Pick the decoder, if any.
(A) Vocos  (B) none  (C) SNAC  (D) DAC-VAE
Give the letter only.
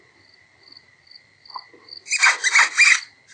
B